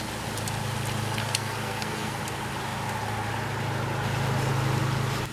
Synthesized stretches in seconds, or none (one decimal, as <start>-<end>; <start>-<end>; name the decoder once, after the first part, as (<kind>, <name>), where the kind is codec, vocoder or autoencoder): 1.2-2.2 (codec, SNAC)